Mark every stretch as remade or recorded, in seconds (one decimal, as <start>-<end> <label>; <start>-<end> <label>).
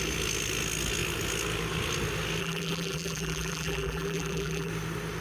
0.0-2.4 recorded; 2.4-4.7 remade; 4.7-5.2 recorded